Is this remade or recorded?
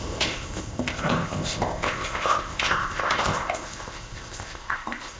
remade